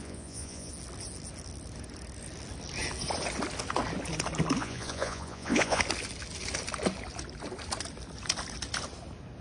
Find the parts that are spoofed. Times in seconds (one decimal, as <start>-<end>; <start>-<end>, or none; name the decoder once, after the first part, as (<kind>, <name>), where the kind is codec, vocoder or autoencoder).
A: 0.0-0.7 (vocoder, Vocos); 4.6-5.8